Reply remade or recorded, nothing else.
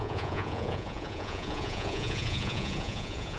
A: remade